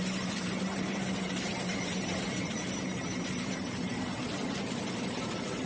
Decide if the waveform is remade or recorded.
remade